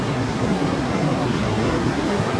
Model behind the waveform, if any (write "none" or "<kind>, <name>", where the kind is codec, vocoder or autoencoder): codec, SNAC